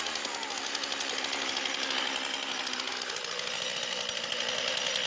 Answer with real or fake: real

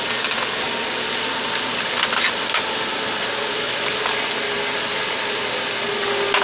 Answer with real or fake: real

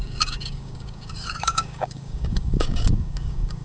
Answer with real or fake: fake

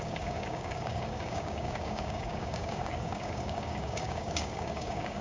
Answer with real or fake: fake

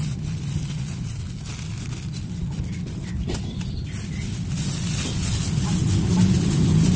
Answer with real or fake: real